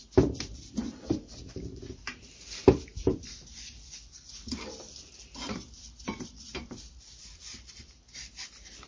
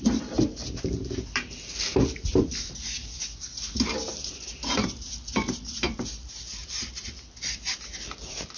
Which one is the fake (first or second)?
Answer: first